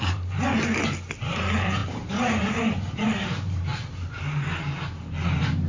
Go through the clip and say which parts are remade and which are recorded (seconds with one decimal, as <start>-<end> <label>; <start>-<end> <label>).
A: 0.0-0.4 remade; 0.4-1.4 recorded; 1.4-3.7 remade; 3.7-5.3 recorded; 5.3-5.7 remade